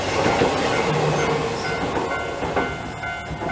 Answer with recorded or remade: recorded